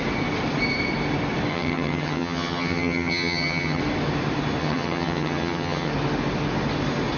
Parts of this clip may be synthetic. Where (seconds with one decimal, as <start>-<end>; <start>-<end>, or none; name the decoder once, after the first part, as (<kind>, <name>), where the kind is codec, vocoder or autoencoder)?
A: 1.5-3.8 (vocoder, HiFi-GAN); 4.6-5.9